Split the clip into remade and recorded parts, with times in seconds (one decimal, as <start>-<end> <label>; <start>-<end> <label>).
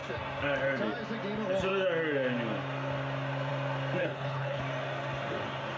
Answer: 0.0-4.0 recorded; 4.0-4.6 remade; 4.6-5.8 recorded